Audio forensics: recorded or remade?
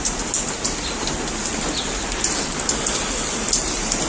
recorded